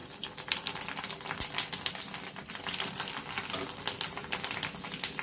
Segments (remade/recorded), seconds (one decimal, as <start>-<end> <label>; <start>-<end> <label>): 0.0-3.1 remade; 3.1-5.2 recorded

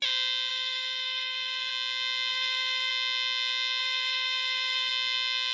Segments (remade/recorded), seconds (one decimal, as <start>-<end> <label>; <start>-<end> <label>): 0.0-0.5 recorded; 0.5-1.7 remade; 1.7-2.3 recorded; 2.3-2.9 remade; 2.9-3.8 recorded; 3.8-4.9 remade; 4.9-5.5 recorded

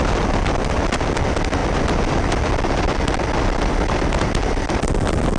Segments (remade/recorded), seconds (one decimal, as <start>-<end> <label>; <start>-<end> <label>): 0.0-1.6 recorded; 1.6-4.8 remade; 4.8-5.4 recorded

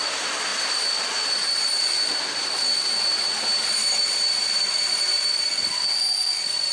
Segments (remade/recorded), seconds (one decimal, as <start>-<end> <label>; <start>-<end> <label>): 0.0-6.7 recorded

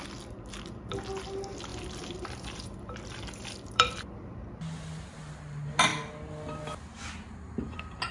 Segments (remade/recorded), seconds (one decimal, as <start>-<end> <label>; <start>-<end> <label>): 0.0-1.7 recorded; 1.7-4.3 remade; 4.3-8.1 recorded

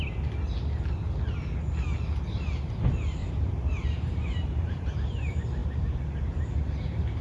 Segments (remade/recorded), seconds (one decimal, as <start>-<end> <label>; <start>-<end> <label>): 0.0-3.2 recorded; 3.2-4.9 remade; 4.9-5.6 recorded; 5.6-6.4 remade; 6.4-7.2 recorded

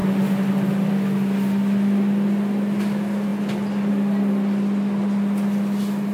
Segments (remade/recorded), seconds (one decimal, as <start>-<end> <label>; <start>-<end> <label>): 0.0-6.1 recorded

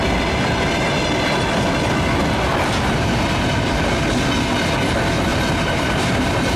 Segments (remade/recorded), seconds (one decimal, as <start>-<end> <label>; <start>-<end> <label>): 0.0-5.3 recorded; 5.3-6.6 remade